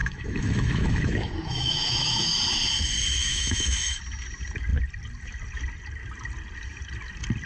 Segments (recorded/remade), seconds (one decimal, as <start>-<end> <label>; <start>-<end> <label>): 0.0-2.3 remade; 2.3-3.2 recorded; 3.2-4.0 remade; 4.0-7.5 recorded